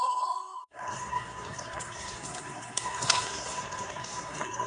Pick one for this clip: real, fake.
fake